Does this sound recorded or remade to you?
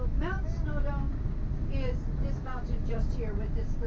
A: recorded